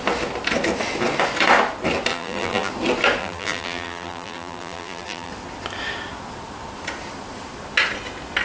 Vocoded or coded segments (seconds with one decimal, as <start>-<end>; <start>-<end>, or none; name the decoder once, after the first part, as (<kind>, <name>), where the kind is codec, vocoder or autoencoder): 2.1-2.7 (vocoder, BigVGAN v2); 3.2-5.3